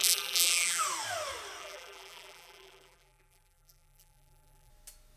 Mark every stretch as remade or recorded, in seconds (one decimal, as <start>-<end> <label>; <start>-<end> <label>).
0.0-0.8 remade; 0.8-1.6 recorded; 1.6-4.7 remade; 4.7-5.2 recorded